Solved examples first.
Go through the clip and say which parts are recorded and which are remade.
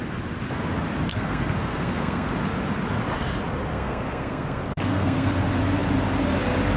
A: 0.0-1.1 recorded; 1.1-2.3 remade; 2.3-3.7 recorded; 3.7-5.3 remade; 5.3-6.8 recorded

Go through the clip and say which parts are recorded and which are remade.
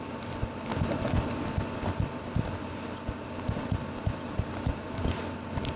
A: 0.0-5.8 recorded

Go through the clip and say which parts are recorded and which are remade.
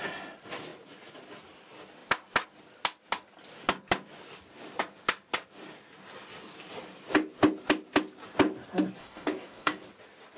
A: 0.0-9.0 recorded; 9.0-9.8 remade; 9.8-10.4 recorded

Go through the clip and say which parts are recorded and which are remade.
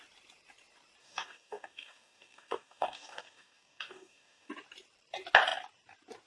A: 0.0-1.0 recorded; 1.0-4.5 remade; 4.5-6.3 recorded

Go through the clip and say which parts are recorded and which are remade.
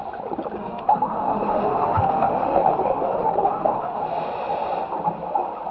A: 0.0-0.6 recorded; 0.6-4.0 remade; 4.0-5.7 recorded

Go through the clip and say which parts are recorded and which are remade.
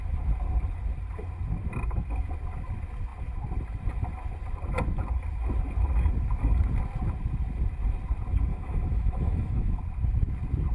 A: 0.0-8.5 recorded; 8.5-9.8 remade; 9.8-10.7 recorded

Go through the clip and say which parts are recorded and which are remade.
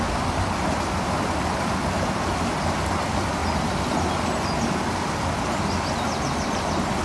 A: 0.0-7.0 recorded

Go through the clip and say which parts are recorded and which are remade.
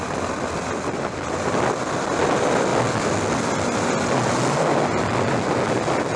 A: 0.0-6.2 recorded